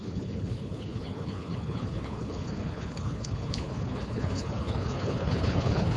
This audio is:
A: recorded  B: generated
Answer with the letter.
B